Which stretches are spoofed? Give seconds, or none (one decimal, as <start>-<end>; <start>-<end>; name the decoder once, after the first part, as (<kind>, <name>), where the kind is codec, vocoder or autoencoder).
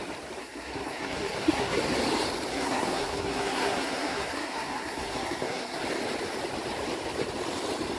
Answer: 0.4-1.8 (codec, SNAC); 2.5-5.8